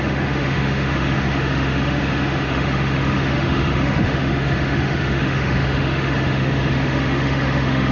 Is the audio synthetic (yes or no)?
yes